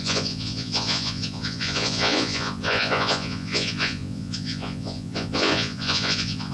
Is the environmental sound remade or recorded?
remade